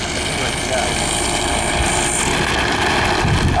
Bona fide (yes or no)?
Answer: yes